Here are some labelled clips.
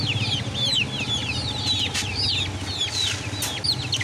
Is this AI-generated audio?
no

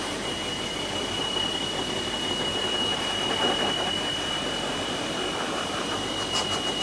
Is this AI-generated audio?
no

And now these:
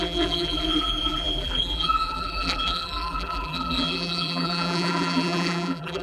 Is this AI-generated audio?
yes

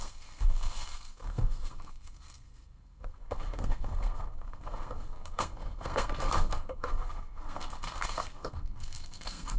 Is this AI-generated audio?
yes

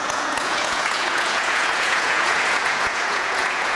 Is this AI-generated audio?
yes